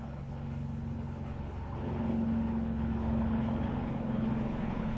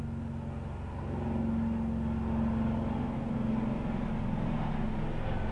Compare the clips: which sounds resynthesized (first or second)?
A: first